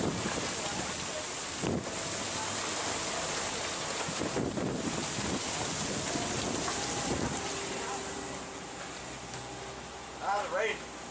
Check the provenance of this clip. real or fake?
real